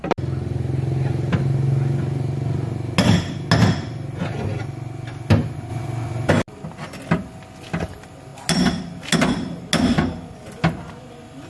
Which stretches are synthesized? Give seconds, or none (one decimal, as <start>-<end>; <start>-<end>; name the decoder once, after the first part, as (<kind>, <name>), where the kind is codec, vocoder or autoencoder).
none